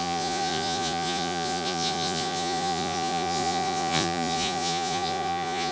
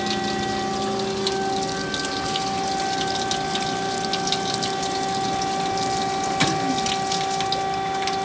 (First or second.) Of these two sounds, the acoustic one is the second